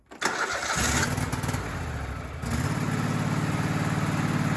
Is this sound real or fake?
real